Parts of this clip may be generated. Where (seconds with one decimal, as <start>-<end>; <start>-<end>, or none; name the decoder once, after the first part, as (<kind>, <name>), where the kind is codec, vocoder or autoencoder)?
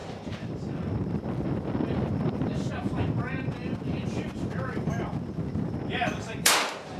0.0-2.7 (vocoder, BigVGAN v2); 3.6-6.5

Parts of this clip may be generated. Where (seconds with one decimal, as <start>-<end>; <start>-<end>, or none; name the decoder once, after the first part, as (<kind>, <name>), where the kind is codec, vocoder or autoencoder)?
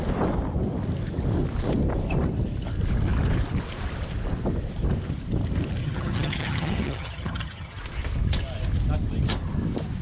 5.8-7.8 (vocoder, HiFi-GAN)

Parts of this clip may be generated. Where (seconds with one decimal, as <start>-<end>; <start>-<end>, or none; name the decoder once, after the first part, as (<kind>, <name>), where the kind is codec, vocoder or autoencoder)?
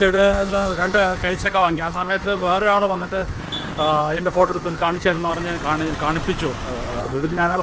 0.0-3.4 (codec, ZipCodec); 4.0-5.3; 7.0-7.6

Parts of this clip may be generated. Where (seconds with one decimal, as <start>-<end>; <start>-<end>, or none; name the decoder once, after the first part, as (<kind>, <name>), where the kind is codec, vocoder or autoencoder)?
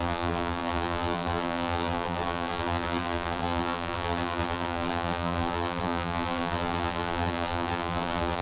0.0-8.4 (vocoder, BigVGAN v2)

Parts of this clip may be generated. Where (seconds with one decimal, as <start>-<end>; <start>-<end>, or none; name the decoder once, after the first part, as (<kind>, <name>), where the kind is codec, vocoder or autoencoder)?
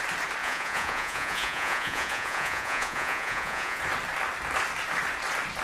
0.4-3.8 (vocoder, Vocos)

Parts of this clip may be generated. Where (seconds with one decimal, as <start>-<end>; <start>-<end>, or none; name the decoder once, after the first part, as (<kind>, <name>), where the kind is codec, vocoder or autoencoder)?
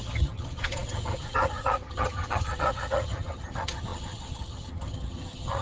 0.0-5.6 (vocoder, HiFi-GAN)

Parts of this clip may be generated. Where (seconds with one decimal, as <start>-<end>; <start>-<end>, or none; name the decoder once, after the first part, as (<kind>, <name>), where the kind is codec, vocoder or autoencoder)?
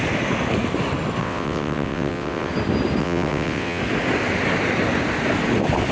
1.2-2.5 (vocoder, WaveNeXt); 3.0-3.8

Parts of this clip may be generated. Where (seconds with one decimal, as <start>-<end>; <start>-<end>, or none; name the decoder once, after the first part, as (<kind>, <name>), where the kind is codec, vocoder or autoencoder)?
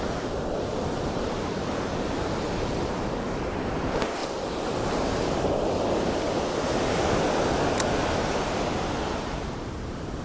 0.7-3.3 (vocoder, BigVGAN v2); 4.2-5.5